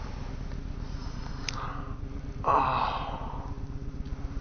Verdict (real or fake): real